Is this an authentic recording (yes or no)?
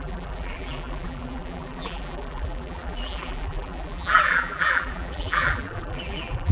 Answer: no